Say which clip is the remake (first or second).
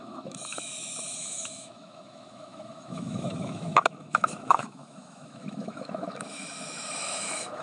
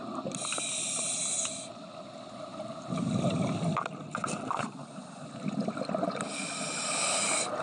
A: first